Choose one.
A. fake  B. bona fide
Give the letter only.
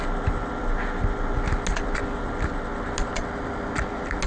B